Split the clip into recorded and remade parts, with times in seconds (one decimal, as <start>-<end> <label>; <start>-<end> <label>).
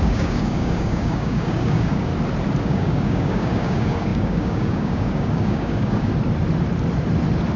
0.0-2.1 remade; 2.1-2.6 recorded; 2.6-6.1 remade; 6.1-7.6 recorded